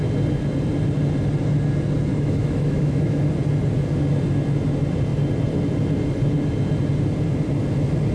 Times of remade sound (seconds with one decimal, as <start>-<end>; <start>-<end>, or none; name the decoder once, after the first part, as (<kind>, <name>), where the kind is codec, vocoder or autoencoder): 2.1-3.3 (autoencoder, DAC-VAE)